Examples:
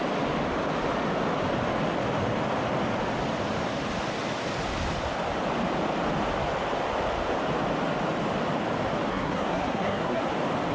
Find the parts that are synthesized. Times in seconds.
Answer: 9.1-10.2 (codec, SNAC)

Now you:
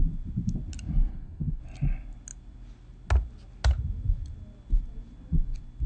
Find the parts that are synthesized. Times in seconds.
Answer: 1.1-1.6 (codec, SNAC)

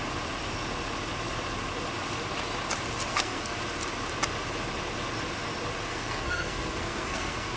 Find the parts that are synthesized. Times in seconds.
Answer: 3.1-3.6 (codec, SNAC); 5.9-7.6

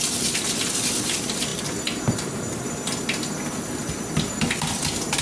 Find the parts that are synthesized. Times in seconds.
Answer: none

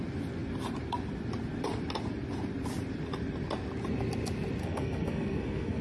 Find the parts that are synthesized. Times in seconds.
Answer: 4.6-5.8 (codec, SNAC)

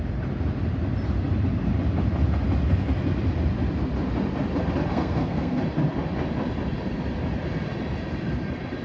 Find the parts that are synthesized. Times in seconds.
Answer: 4.9-5.6 (codec, SNAC)

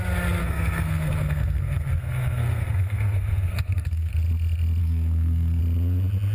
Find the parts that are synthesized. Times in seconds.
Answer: 0.4-4.1 (codec, SNAC); 4.8-5.6

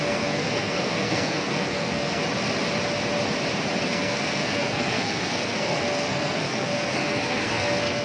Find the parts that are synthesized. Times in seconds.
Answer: 0.0-2.2 (codec, SNAC); 3.8-8.0